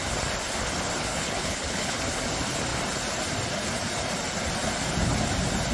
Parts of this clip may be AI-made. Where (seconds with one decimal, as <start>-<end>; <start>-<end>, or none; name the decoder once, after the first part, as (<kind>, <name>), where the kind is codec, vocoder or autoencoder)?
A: 1.1-2.0 (codec, HILCodec)